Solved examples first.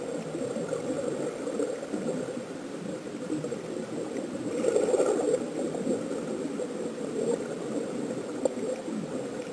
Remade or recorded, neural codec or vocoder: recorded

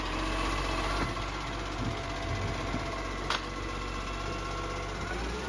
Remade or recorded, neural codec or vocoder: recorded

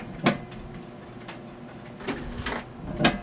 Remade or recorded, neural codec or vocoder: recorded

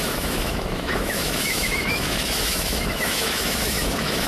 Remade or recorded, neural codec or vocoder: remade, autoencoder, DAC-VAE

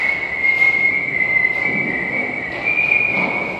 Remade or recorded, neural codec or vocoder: recorded